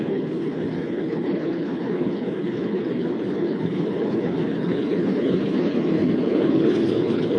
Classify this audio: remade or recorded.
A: remade